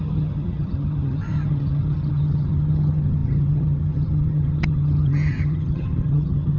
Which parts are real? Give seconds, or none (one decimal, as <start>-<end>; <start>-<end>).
none